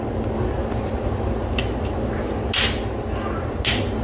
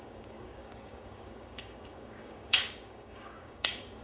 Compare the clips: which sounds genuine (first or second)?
first